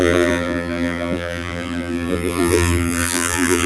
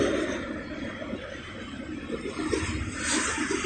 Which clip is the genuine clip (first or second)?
second